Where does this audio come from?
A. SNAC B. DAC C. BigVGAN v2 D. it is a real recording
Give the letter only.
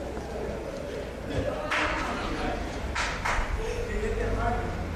D